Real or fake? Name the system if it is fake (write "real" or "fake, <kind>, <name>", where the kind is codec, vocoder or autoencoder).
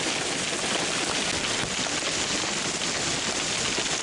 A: real